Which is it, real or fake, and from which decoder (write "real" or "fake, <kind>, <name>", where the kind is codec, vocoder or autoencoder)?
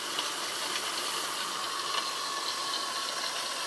real